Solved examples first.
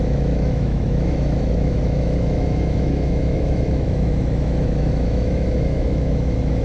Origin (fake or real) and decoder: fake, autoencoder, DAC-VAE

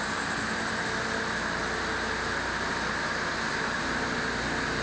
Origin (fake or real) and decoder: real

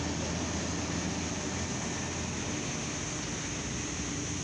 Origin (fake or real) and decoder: real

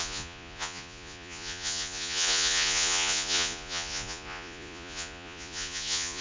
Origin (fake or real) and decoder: fake, vocoder, Vocos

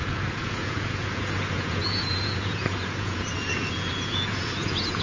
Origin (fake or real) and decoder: fake, vocoder, Vocos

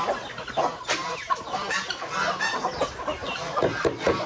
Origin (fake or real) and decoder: real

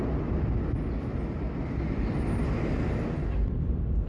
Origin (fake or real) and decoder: real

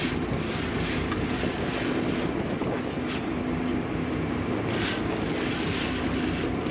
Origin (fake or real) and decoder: real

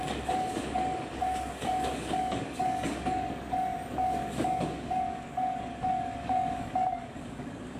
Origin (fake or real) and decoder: fake, codec, DAC